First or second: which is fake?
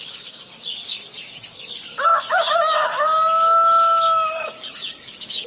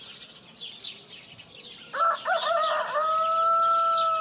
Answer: first